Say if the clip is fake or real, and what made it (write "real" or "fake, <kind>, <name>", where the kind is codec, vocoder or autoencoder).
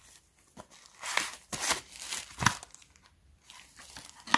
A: real